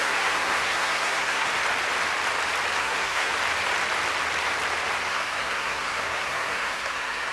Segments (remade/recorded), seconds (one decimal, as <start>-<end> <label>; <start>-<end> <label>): 0.0-1.5 remade; 1.5-2.8 recorded; 2.8-3.3 remade; 3.3-5.1 recorded; 5.1-7.3 remade